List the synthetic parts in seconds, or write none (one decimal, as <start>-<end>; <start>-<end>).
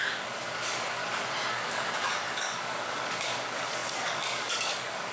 0.0-1.0; 1.5-5.1